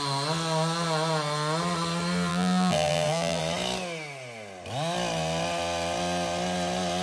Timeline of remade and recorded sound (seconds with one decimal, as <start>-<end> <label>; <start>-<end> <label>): 0.0-2.3 recorded; 2.3-3.4 remade; 3.4-7.0 recorded